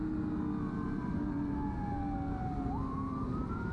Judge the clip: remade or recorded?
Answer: recorded